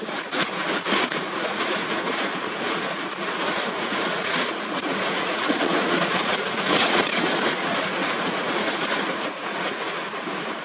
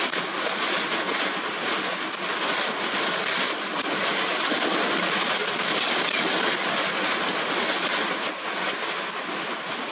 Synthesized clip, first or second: first